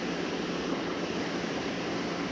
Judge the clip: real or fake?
real